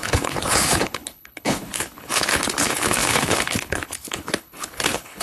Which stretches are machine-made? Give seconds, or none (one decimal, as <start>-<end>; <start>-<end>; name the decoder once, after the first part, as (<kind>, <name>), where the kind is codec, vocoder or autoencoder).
0.0-5.2 (codec, HILCodec)